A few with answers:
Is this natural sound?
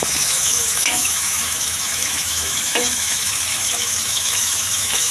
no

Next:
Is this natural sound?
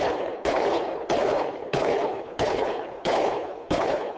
no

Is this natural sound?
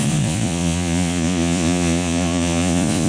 no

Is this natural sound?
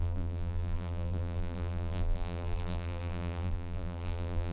no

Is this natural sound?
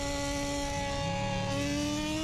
yes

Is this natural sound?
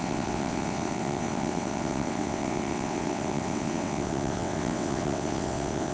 no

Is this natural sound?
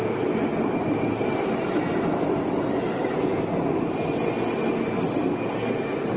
yes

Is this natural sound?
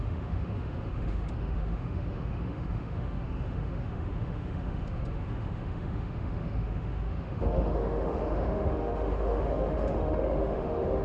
no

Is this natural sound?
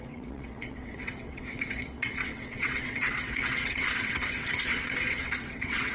no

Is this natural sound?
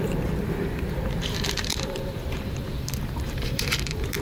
no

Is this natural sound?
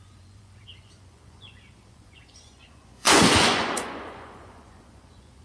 no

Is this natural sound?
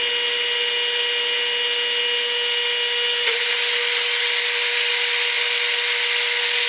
yes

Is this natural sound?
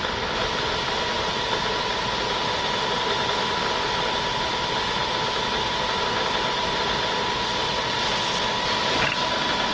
yes